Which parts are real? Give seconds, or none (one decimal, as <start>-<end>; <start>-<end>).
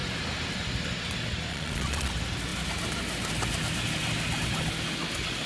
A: 0.0-1.5; 2.1-5.5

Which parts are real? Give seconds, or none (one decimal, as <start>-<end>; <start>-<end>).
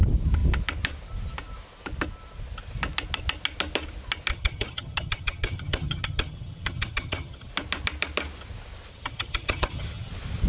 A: 0.0-4.3; 7.5-8.9; 10.1-10.5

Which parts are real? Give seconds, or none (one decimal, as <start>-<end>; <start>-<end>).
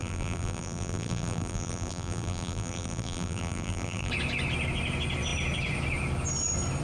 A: 4.1-6.8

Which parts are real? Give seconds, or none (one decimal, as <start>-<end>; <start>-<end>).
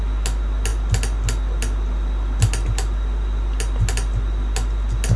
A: 0.0-5.2